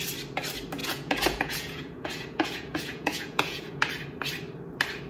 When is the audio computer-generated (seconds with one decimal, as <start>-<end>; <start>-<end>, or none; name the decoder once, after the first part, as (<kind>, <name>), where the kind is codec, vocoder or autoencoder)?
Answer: 0.8-3.9 (vocoder, Vocos)